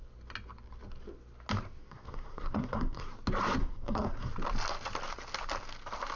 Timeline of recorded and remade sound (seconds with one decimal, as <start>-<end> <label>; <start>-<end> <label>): 0.0-1.8 recorded; 1.8-3.1 remade; 3.1-3.6 recorded; 3.6-4.3 remade; 4.3-6.2 recorded